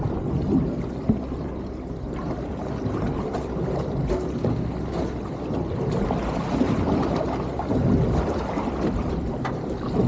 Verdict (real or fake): real